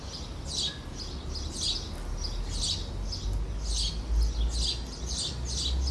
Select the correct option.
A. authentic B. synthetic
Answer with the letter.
A